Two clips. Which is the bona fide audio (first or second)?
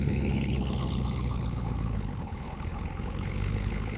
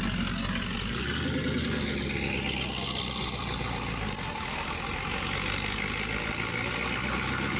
second